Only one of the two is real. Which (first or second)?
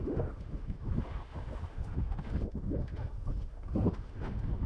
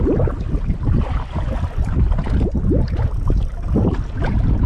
second